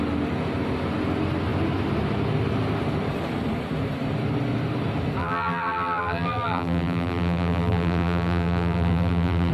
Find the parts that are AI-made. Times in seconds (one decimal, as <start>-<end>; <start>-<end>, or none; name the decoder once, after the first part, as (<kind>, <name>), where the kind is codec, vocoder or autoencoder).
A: 5.2-9.5 (vocoder, BigVGAN v2)